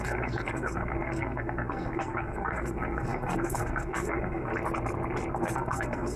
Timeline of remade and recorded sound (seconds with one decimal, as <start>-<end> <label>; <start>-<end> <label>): 0.0-4.5 remade; 4.5-5.4 recorded; 5.4-6.2 remade